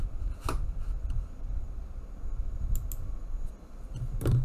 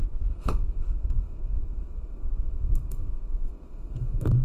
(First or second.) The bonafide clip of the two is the first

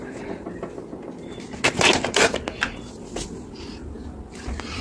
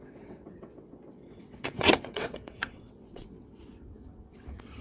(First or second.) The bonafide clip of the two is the first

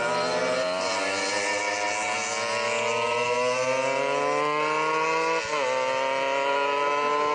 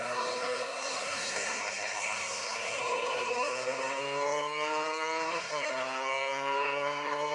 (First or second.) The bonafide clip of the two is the first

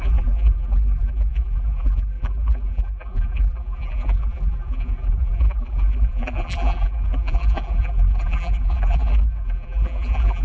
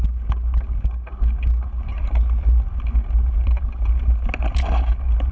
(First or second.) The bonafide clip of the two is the second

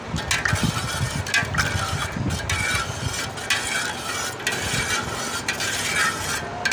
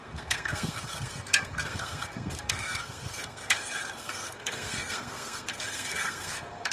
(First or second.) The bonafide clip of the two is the first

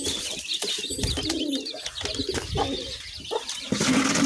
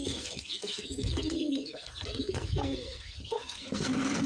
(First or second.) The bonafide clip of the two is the first